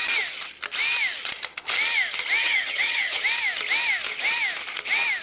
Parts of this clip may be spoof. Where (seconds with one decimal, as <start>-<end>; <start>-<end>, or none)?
2.4-3.2